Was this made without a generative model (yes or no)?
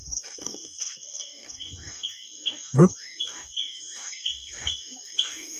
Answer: no